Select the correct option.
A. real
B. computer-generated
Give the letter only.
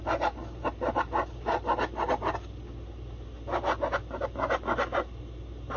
A